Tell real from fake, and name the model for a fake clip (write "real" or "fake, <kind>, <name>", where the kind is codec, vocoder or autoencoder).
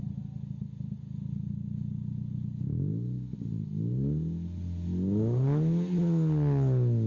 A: real